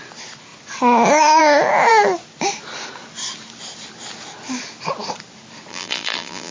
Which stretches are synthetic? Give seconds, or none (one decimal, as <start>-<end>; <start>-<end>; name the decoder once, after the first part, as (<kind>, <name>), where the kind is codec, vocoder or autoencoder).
5.7-6.5 (vocoder, BigVGAN v2)